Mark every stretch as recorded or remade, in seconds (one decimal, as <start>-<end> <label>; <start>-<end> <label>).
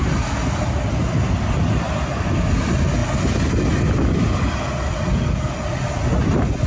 0.0-6.7 recorded